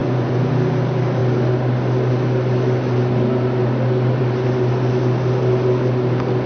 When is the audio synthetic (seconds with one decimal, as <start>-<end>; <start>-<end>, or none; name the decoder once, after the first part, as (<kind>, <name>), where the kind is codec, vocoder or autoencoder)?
0.0-0.5 (vocoder, Vocos)